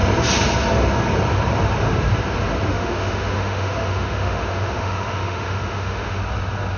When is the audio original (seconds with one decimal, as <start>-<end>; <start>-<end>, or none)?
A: 0.0-2.7; 6.2-6.8